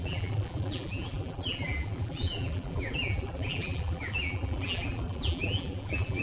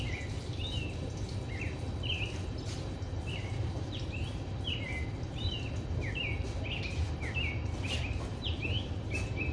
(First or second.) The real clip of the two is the second